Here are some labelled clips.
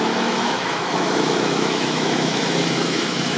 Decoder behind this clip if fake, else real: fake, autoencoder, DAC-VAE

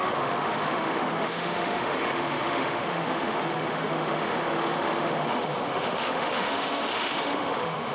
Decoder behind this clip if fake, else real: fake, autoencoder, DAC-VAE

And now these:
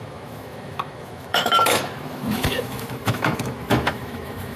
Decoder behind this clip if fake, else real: fake, autoencoder, DAC-VAE